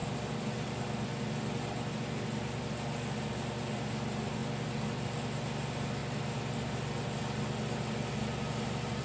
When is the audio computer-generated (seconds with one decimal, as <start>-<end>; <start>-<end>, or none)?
0.0-1.2